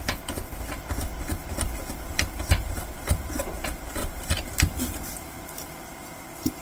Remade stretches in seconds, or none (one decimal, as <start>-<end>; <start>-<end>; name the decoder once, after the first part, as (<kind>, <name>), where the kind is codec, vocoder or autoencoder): 4.0-5.0 (vocoder, BigVGAN v2)